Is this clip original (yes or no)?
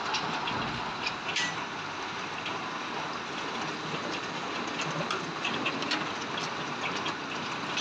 yes